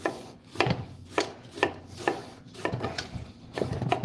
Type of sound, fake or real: fake